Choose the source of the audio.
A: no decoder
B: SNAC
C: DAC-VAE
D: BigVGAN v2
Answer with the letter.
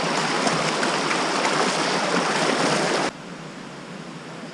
A